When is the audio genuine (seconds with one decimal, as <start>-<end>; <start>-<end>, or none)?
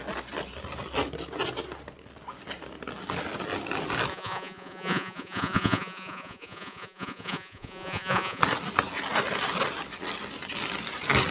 0.0-4.1; 8.4-11.3